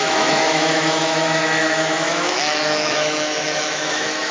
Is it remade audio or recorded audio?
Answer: remade